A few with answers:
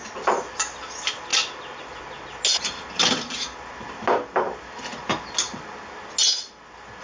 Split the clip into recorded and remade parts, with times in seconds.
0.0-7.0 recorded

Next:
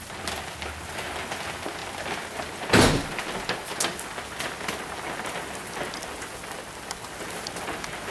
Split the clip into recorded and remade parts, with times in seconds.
0.0-8.1 recorded

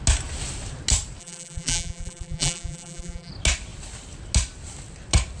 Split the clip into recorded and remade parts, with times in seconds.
0.0-1.2 recorded; 1.2-3.3 remade; 3.3-5.4 recorded

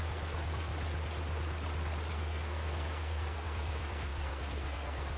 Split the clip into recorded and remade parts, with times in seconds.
0.0-0.7 remade; 0.7-2.1 recorded; 2.1-5.2 remade

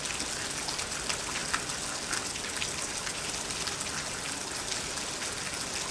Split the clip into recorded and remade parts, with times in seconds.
0.0-1.4 recorded; 1.4-4.9 remade; 4.9-5.9 recorded

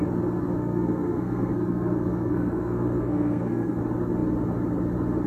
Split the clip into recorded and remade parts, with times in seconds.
0.0-0.6 recorded; 0.6-3.8 remade; 3.8-5.3 recorded

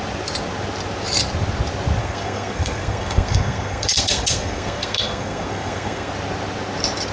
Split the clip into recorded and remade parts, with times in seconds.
0.0-2.0 recorded; 2.0-6.1 remade; 6.1-7.1 recorded